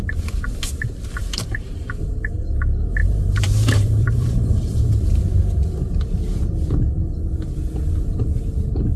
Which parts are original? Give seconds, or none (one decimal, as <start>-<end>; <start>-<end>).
0.0-1.2; 2.4-3.0; 5.2-9.0